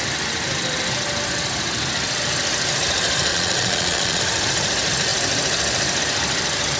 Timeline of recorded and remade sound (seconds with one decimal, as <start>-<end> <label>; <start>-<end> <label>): 0.0-3.3 recorded; 3.3-4.2 remade; 4.2-6.8 recorded